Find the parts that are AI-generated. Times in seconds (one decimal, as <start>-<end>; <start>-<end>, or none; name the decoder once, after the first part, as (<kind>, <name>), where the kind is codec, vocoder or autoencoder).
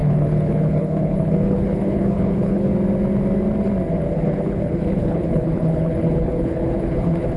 0.0-2.7 (codec, HILCodec); 3.9-7.4